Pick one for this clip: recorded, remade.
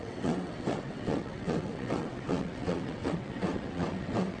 remade